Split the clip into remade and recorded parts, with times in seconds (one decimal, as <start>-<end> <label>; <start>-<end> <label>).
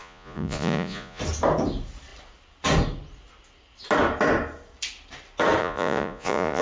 0.0-1.2 remade; 1.2-5.6 recorded; 5.6-6.6 remade